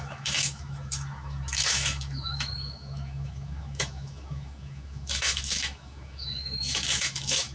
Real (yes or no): no